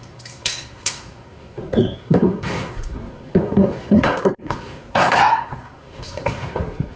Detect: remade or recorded remade